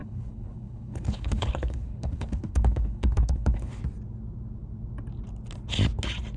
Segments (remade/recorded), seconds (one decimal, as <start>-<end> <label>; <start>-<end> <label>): 0.0-3.8 remade; 3.8-6.4 recorded